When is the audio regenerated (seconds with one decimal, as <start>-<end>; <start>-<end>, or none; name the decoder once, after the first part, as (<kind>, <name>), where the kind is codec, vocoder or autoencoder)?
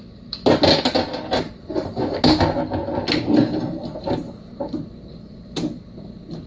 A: 1.1-2.0 (vocoder, BigVGAN v2)